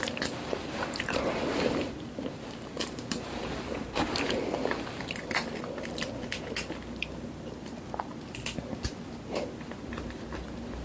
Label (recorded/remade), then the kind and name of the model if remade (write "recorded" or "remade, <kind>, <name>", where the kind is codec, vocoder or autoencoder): recorded